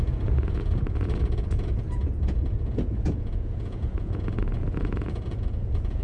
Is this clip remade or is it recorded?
remade